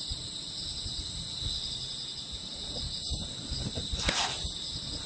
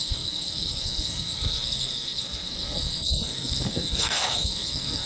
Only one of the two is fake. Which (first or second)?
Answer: second